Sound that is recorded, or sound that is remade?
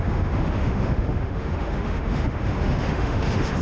remade